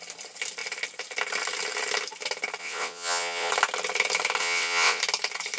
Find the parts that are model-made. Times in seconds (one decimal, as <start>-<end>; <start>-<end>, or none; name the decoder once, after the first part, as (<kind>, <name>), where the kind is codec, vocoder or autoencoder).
2.6-3.5 (vocoder, WaveNeXt); 4.4-5.0